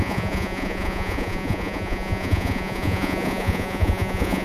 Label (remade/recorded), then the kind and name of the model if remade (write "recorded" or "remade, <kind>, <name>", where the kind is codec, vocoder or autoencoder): remade, vocoder, Vocos